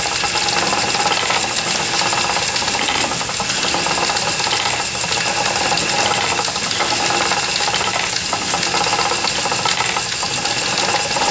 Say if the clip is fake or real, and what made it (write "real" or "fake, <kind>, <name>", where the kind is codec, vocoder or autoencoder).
real